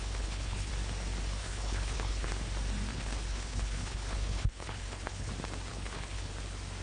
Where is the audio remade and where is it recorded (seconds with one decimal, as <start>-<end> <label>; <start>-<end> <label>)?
0.0-0.7 remade; 0.7-1.4 recorded; 1.4-2.3 remade; 2.3-2.9 recorded; 2.9-5.3 remade; 5.3-5.7 recorded; 5.7-6.3 remade; 6.3-6.8 recorded